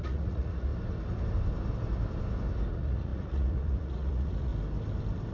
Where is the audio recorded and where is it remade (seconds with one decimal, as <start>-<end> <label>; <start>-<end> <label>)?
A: 0.0-0.7 remade; 0.7-2.7 recorded; 2.7-4.5 remade; 4.5-5.3 recorded